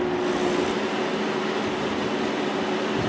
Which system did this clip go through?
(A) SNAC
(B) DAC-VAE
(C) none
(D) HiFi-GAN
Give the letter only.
C